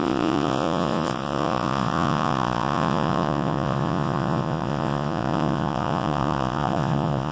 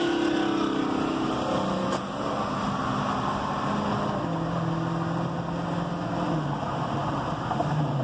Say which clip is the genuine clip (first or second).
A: second